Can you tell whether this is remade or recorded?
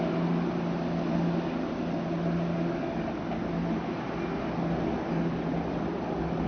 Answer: recorded